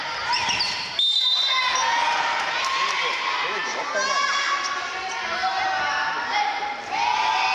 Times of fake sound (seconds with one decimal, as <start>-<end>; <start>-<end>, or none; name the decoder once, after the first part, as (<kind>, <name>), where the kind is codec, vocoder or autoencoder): none